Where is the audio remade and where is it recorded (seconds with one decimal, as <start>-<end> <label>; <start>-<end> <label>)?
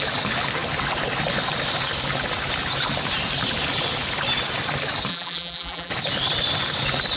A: 0.0-5.1 recorded; 5.1-5.9 remade; 5.9-7.2 recorded